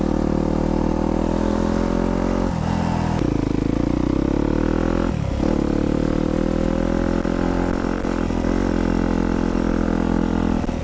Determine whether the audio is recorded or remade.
recorded